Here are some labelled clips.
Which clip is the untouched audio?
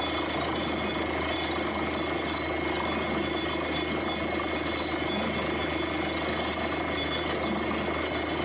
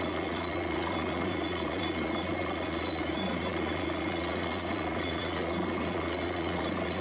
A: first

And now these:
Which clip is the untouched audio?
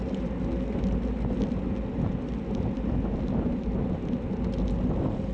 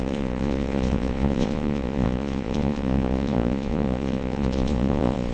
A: first